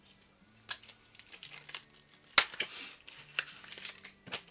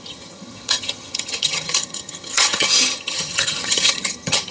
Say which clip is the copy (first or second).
second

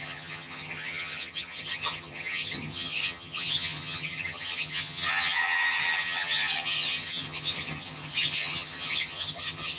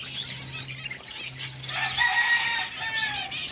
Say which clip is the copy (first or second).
first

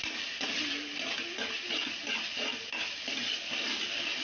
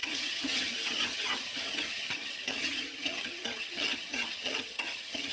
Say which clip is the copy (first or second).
second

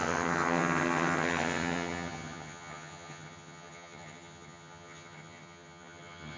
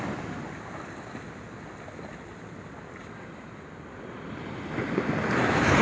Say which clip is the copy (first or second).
first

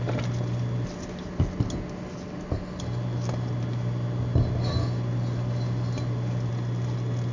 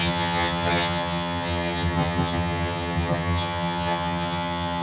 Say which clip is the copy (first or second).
second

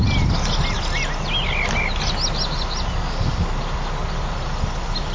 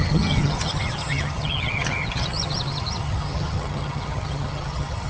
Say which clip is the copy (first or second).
second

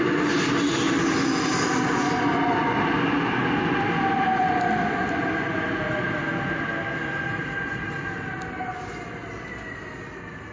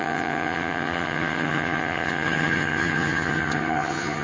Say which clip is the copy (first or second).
second